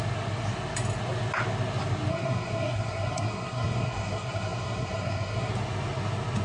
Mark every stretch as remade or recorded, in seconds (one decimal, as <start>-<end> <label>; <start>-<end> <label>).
0.0-2.1 recorded; 2.1-5.5 remade; 5.5-6.4 recorded

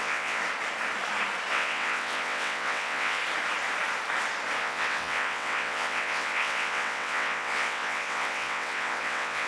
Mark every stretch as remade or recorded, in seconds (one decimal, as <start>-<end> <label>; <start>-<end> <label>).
0.0-0.4 remade; 0.4-1.5 recorded; 1.5-3.2 remade; 3.2-4.6 recorded; 4.6-9.5 remade

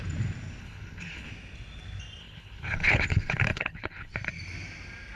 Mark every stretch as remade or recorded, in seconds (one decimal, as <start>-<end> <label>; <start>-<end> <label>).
0.0-0.6 recorded; 0.6-1.3 remade; 1.3-2.2 recorded; 2.2-4.1 remade; 4.1-5.2 recorded

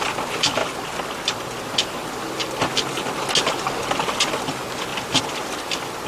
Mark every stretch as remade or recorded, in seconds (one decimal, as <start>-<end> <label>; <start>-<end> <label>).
0.0-0.6 recorded; 0.6-1.6 remade; 1.6-4.9 recorded; 4.9-5.6 remade; 5.6-6.1 recorded

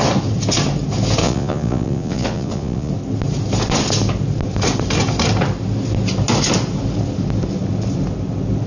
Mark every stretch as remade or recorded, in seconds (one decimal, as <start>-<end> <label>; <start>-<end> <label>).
0.0-1.2 recorded; 1.2-2.9 remade; 2.9-8.7 recorded

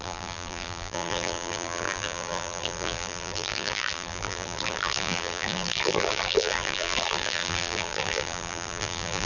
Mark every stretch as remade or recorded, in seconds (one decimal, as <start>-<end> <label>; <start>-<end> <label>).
0.0-9.3 remade

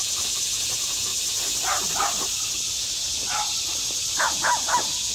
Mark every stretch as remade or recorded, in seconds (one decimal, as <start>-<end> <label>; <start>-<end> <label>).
0.0-1.1 remade; 1.1-4.2 recorded; 4.2-5.1 remade

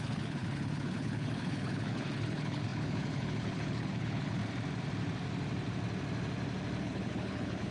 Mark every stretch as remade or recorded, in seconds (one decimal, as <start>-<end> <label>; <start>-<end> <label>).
0.0-4.4 remade; 4.4-6.8 recorded; 6.8-7.7 remade